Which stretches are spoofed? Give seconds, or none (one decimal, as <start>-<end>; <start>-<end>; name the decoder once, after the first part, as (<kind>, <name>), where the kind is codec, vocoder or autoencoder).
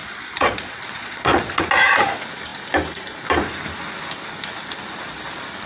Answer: 0.0-1.6 (vocoder, Vocos)